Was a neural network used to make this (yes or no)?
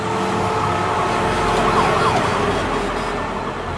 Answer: no